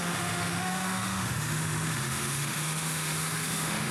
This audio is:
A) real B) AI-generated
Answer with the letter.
B